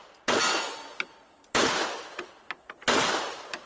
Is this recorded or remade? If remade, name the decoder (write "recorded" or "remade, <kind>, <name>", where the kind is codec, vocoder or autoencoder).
recorded